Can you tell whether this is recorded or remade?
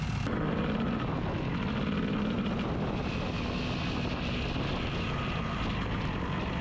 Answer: recorded